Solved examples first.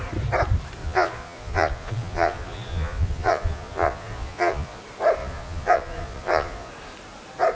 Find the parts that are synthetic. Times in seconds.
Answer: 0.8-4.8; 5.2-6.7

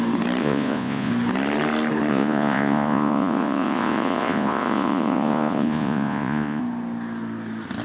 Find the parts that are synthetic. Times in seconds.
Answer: 0.4-1.1; 2.1-6.6